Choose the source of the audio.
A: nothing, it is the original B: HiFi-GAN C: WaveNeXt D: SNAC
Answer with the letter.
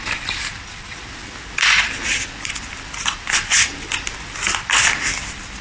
A